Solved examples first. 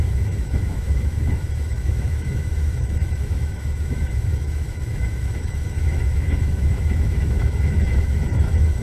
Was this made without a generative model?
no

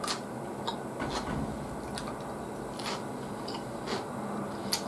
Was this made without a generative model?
yes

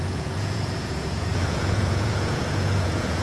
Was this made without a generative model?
no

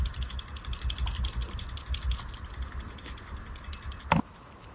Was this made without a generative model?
yes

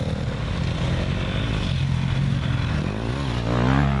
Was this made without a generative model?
yes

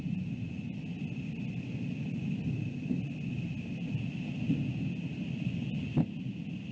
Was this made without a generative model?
yes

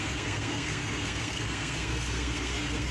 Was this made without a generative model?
no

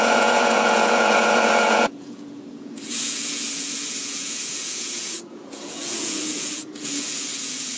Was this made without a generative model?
no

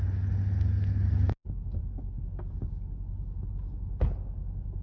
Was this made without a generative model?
yes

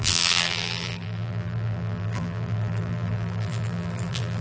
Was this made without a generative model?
no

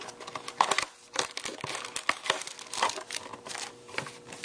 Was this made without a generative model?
yes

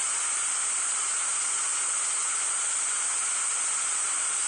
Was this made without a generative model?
yes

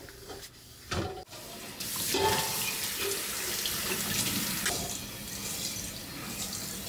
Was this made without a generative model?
yes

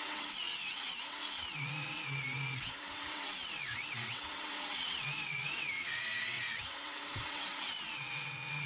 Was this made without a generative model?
no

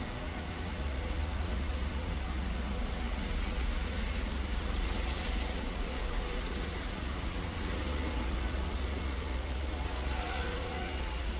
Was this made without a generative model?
no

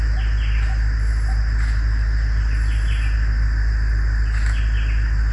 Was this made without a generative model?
yes